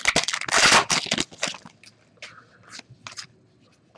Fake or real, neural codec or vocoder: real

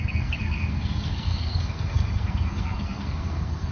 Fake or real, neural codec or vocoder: fake, codec, SNAC